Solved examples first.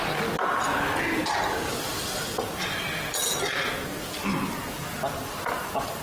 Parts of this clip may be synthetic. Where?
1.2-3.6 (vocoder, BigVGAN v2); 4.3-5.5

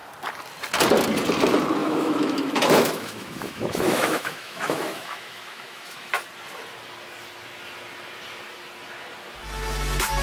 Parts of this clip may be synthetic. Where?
1.8-6.1 (autoencoder, DAC-VAE)

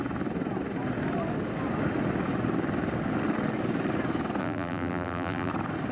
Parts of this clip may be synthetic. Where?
4.4-5.5 (vocoder, BigVGAN v2)